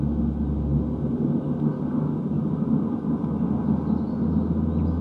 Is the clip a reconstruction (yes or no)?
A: no